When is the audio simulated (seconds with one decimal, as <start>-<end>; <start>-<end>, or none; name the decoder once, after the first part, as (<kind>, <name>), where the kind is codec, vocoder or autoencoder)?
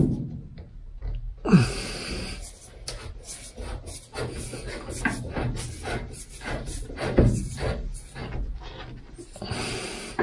none